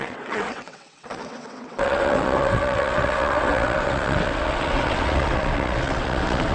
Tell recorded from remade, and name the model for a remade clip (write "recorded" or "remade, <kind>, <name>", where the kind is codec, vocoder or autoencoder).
remade, vocoder, WaveNeXt